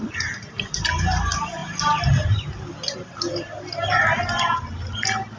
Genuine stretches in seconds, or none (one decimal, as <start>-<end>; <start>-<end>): 0.0-5.4